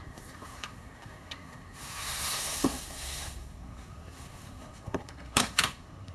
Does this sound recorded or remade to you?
remade